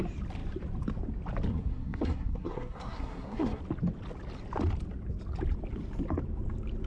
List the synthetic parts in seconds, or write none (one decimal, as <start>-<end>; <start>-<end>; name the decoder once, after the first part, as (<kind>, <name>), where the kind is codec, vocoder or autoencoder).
1.5-3.6 (codec, SNAC)